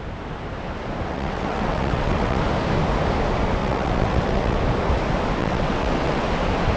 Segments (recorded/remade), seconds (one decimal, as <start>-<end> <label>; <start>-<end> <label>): 0.0-1.1 recorded; 1.1-2.4 remade; 2.4-3.6 recorded; 3.6-4.6 remade; 4.6-5.4 recorded; 5.4-6.2 remade; 6.2-6.8 recorded